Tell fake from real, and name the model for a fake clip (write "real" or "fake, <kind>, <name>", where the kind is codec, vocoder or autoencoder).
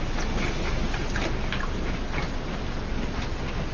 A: real